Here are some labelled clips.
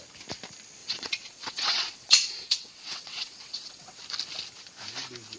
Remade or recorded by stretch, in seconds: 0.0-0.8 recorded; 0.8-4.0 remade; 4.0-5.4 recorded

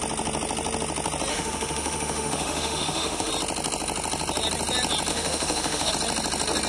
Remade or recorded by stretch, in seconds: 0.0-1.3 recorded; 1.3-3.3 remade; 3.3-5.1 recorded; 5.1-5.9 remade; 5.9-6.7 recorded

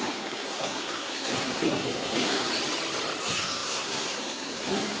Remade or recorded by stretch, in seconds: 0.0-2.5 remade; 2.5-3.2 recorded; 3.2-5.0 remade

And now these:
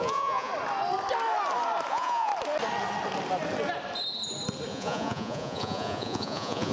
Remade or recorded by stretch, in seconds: 0.0-0.5 remade; 0.5-1.9 recorded; 1.9-2.3 remade; 2.3-4.7 recorded; 4.7-6.7 remade

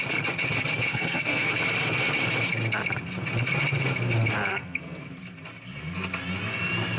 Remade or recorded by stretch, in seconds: 0.0-0.9 recorded; 0.9-1.5 remade; 1.5-4.5 recorded; 4.5-5.1 remade; 5.1-7.0 recorded